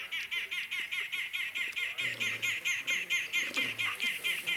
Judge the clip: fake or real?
real